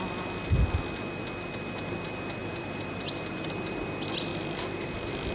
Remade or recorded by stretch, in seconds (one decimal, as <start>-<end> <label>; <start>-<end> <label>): 0.0-2.4 recorded; 2.4-3.3 remade; 3.3-4.3 recorded; 4.3-5.3 remade